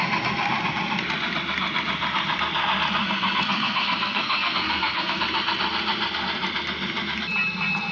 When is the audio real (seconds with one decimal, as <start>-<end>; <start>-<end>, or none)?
0.0-3.0; 5.2-7.9